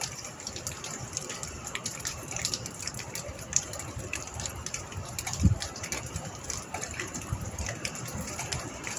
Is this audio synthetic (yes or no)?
yes